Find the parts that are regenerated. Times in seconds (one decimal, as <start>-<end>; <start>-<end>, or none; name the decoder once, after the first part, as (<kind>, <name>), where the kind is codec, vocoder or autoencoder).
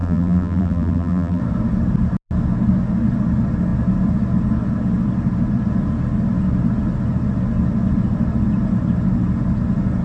0.0-1.4 (vocoder, BigVGAN v2)